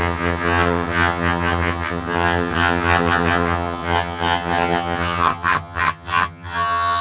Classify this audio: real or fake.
fake